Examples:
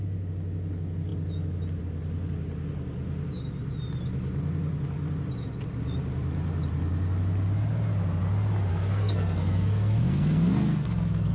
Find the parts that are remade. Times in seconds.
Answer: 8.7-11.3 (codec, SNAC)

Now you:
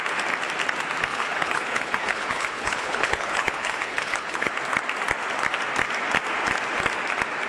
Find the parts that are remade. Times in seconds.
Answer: 1.1-4.5 (codec, HILCodec)

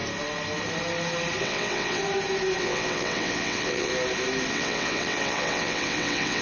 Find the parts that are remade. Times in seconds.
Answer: 1.4-2.0 (vocoder, WaveNeXt); 2.6-3.9; 4.5-6.4

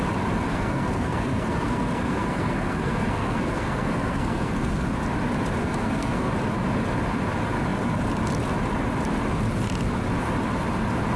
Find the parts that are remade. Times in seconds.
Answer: 0.5-4.7 (codec, SNAC); 5.6-6.3

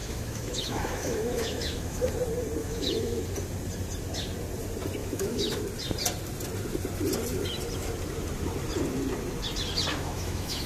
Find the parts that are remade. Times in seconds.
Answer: 0.0-2.1 (autoencoder, DAC-VAE); 2.6-3.2; 5.0-5.6; 9.9-10.7

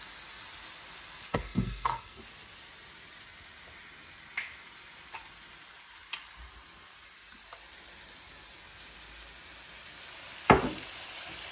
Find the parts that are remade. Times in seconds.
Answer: 1.3-2.2 (codec, SNAC)

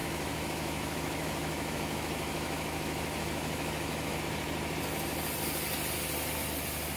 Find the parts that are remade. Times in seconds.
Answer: 0.0-4.2 (autoencoder, DAC-VAE)

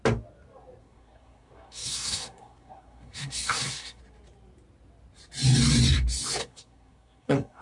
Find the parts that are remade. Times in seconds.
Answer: 0.8-4.0 (codec, SNAC); 6.4-7.6